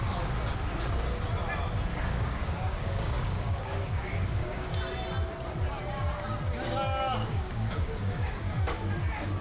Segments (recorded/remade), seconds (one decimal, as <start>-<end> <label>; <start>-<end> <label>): 0.0-1.9 recorded; 1.9-4.7 remade; 4.7-7.2 recorded; 7.2-8.5 remade; 8.5-9.4 recorded